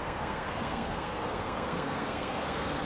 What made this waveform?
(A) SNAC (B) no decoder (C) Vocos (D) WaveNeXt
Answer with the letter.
A